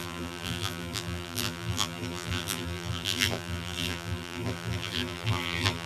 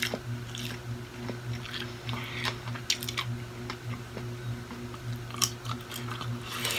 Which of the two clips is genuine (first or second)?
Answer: second